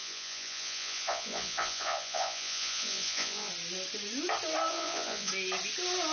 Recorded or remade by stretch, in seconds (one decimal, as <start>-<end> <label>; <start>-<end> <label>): 0.0-3.5 remade; 3.5-4.7 recorded; 4.7-5.3 remade; 5.3-6.1 recorded